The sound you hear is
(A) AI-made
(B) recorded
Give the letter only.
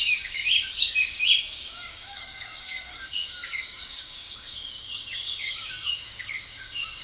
A